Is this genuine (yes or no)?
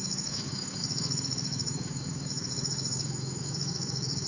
no